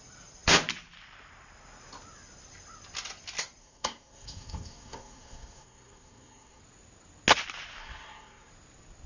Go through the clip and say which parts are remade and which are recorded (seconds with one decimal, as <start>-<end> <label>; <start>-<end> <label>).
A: 0.0-3.6 recorded; 3.6-6.6 remade; 6.6-7.8 recorded; 7.8-8.5 remade; 8.5-9.1 recorded